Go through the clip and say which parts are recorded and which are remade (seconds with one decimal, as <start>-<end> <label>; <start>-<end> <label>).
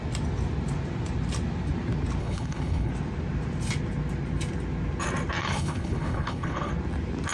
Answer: 0.0-2.2 recorded; 2.2-2.9 remade; 2.9-5.4 recorded; 5.4-6.7 remade; 6.7-7.3 recorded